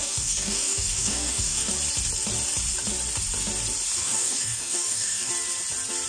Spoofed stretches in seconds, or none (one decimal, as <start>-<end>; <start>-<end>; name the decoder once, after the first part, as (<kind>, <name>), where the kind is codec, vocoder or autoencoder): 0.0-1.7 (codec, DAC); 4.0-5.3

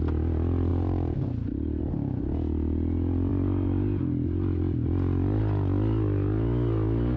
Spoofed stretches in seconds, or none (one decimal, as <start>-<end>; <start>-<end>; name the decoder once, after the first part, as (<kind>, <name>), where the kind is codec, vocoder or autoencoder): none